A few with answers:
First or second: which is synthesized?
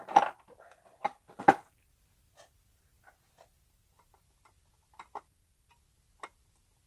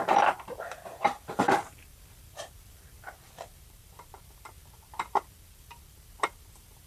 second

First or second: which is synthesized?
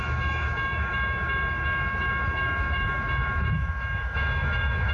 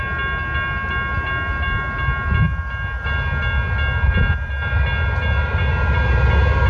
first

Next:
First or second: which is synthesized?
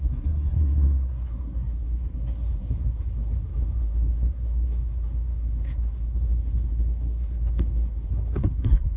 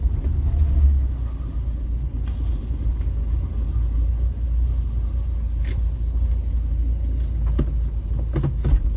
first